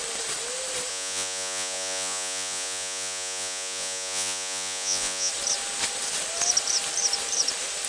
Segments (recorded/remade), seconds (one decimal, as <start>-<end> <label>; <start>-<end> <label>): 0.0-0.9 recorded; 0.9-5.3 remade; 5.3-7.9 recorded